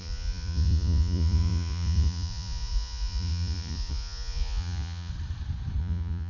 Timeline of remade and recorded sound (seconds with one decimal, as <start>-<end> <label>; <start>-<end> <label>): 0.0-5.1 remade; 5.1-5.8 recorded; 5.8-6.3 remade